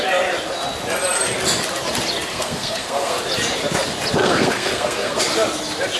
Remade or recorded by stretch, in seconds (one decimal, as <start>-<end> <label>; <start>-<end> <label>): 0.0-2.3 recorded; 2.3-3.2 remade; 3.2-4.2 recorded; 4.2-5.2 remade; 5.2-6.0 recorded